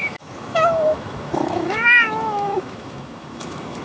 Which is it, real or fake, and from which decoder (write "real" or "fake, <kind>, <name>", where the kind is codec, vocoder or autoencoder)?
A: fake, autoencoder, DAC-VAE